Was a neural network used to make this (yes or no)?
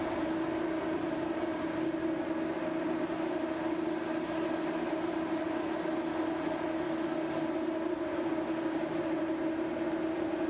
no